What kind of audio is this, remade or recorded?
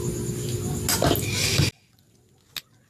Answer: recorded